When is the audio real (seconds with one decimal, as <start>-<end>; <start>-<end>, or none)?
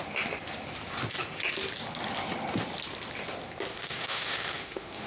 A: 0.0-3.7